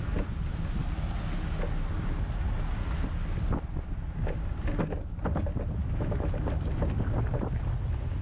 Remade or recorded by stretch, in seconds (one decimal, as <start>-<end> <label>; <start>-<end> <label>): 0.0-5.8 recorded; 5.8-6.3 remade; 6.3-8.2 recorded